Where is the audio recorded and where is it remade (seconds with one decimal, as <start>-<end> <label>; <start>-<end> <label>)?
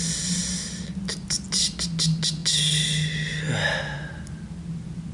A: 0.0-5.1 recorded